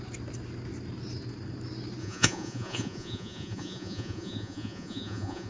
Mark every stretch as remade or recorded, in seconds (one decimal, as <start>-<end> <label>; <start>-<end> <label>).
0.0-2.0 recorded; 2.0-5.5 remade

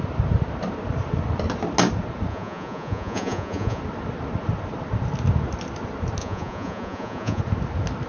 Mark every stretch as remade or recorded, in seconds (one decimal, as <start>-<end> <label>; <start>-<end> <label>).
0.0-2.3 recorded; 2.3-3.8 remade; 3.8-6.2 recorded; 6.2-7.4 remade; 7.4-8.1 recorded

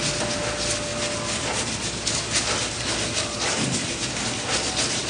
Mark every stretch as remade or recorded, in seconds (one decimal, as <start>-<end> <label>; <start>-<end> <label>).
0.0-5.1 recorded

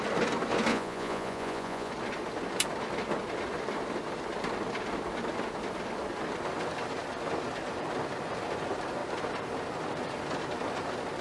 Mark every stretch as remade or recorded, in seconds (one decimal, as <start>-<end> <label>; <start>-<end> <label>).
0.0-0.7 recorded; 0.7-1.9 remade; 1.9-11.2 recorded